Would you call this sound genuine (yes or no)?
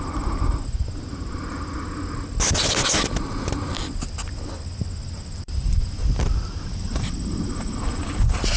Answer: yes